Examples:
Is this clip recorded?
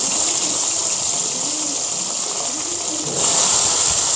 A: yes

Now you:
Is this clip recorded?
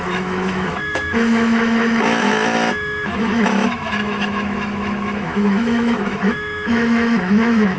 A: no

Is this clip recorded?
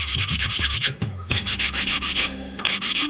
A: no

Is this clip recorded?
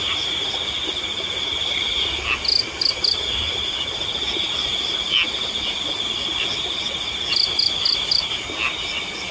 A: yes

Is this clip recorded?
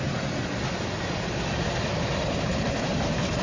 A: yes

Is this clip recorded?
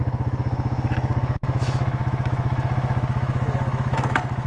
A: no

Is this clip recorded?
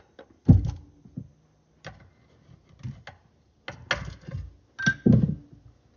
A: yes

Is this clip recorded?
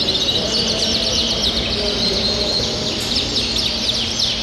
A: yes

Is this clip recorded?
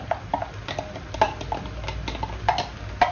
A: yes